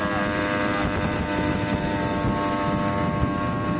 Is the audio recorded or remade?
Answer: recorded